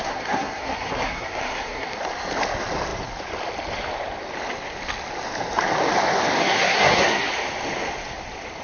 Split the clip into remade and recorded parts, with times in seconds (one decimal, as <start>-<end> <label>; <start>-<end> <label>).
0.0-2.0 remade; 2.0-6.4 recorded; 6.4-7.3 remade; 7.3-8.6 recorded